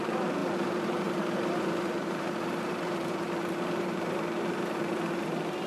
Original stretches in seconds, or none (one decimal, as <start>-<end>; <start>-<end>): none